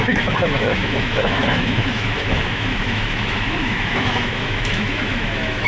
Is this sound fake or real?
fake